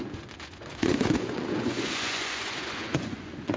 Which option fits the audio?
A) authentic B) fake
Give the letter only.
B